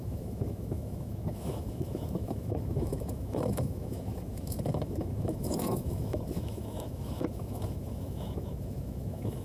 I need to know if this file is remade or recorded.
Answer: remade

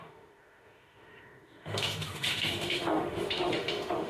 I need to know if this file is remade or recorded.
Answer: remade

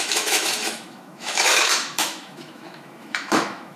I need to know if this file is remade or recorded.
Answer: remade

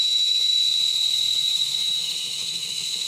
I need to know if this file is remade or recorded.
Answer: remade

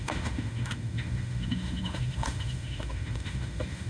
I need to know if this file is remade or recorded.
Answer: remade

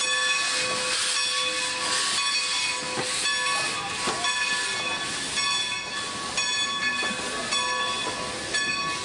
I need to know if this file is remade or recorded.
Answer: recorded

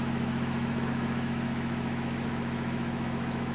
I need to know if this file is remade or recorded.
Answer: remade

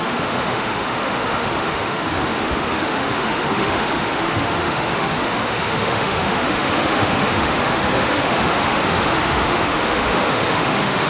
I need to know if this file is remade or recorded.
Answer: remade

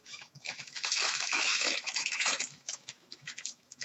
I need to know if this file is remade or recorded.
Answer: remade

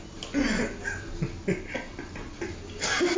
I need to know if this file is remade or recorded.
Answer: recorded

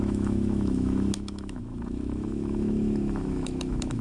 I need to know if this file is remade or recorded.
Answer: remade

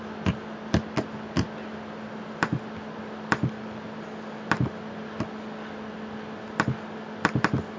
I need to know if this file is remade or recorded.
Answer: recorded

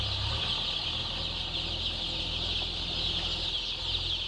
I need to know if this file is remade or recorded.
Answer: recorded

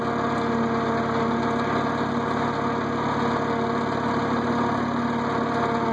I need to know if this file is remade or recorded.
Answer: recorded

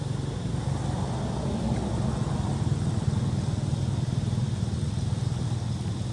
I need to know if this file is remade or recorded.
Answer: recorded